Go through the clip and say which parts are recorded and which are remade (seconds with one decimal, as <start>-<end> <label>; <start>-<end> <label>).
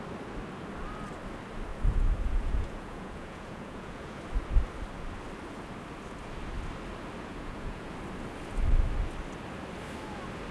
0.0-1.7 recorded; 1.7-4.2 remade; 4.2-7.3 recorded; 7.3-7.9 remade; 7.9-10.5 recorded